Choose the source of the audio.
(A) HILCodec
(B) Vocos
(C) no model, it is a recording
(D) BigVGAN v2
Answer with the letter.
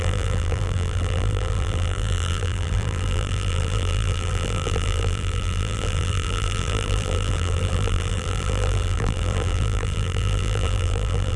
D